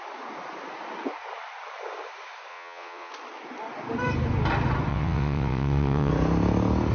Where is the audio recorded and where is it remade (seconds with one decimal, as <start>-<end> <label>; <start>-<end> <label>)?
0.0-2.5 recorded; 2.5-3.1 remade; 3.1-4.9 recorded; 4.9-6.1 remade; 6.1-6.9 recorded